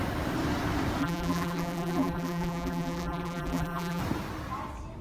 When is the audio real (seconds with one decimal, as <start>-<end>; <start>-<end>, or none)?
0.0-1.0; 4.0-5.0